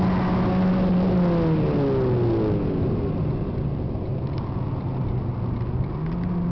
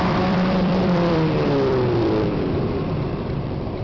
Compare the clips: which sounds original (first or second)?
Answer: first